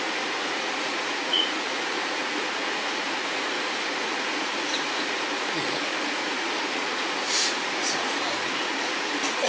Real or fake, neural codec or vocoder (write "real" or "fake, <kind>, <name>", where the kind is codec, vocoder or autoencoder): fake, vocoder, Vocos